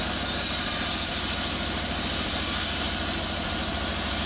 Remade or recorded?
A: recorded